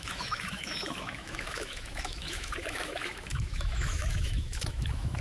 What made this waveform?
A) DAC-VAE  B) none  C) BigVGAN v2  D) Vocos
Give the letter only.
A